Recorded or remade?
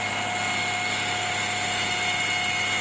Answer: recorded